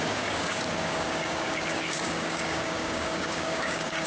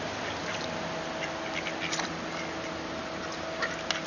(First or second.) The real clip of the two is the second